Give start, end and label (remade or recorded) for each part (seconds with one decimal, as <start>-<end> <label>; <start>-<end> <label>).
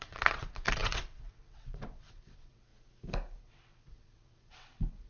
0.0-2.7 remade; 2.7-3.4 recorded; 3.4-5.1 remade